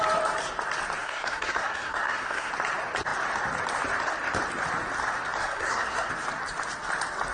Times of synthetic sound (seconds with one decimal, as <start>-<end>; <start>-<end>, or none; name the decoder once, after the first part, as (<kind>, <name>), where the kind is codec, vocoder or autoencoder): 1.0-2.5 (codec, SNAC); 5.4-6.1